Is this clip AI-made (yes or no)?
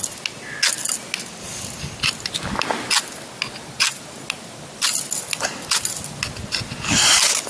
no